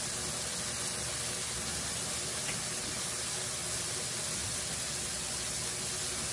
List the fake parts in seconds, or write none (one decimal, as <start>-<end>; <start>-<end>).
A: 1.7-2.5

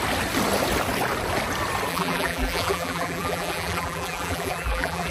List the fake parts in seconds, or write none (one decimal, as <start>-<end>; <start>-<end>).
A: 1.9-5.1